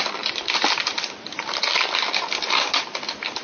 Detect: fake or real real